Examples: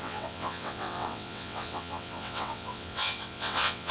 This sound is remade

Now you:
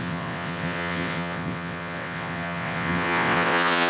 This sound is remade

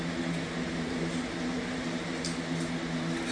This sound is recorded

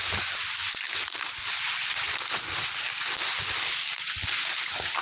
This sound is recorded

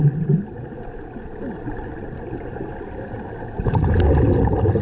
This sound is recorded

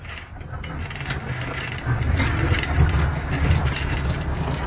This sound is recorded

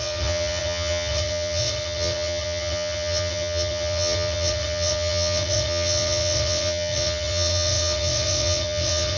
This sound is remade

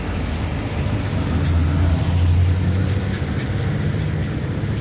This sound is recorded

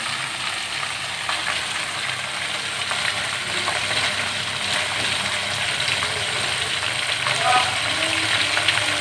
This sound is recorded